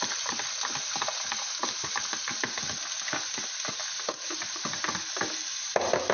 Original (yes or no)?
yes